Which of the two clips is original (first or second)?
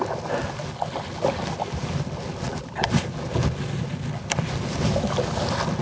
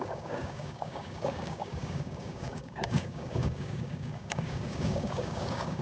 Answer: first